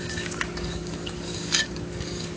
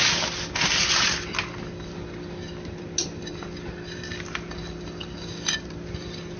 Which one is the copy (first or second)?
first